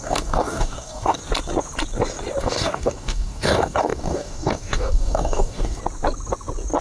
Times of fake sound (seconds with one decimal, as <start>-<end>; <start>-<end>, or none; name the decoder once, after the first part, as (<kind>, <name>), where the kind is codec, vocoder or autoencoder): 0.0-1.2 (codec, DAC); 2.4-5.8